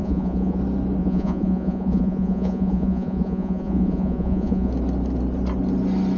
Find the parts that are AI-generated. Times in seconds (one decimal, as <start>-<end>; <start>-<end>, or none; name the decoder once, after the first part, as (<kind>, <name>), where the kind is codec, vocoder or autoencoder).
0.0-0.6 (vocoder, Vocos); 1.0-4.7